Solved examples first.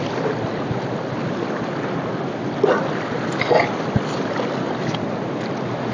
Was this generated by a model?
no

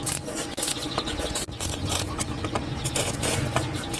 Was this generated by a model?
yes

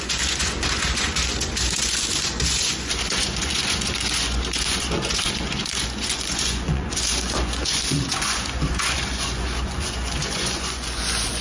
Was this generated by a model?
yes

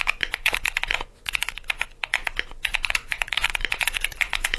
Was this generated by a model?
yes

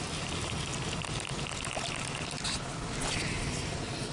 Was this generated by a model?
no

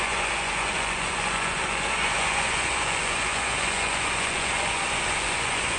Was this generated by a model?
yes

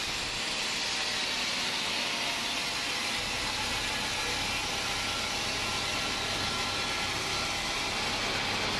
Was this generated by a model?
no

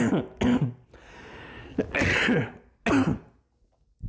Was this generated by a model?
no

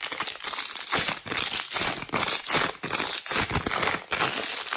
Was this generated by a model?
no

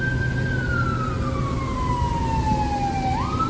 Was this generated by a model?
no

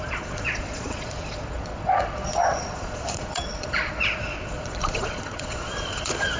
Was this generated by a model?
yes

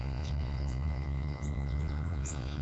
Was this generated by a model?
yes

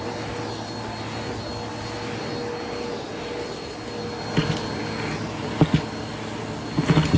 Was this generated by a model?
no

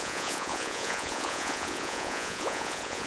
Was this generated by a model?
yes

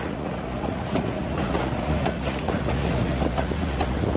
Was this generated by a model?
yes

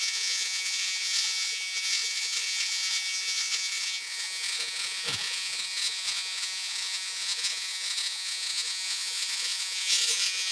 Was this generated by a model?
yes